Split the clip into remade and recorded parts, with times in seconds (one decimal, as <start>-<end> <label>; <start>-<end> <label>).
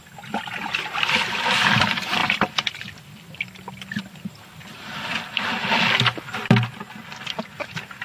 0.0-8.0 recorded